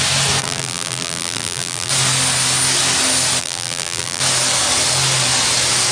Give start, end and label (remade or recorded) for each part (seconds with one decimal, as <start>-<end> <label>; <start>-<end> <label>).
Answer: 0.0-0.4 recorded; 0.4-1.9 remade; 1.9-3.4 recorded; 3.4-4.2 remade; 4.2-5.9 recorded